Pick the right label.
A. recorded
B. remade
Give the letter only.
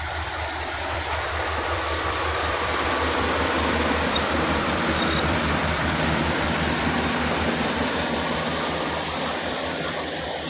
B